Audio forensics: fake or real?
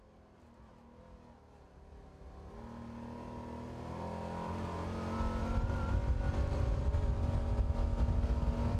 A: real